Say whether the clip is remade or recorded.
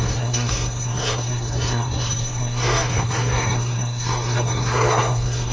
remade